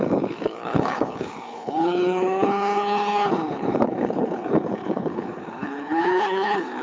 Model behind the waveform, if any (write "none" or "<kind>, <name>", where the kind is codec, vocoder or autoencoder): codec, HILCodec